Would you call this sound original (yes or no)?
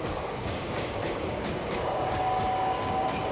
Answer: no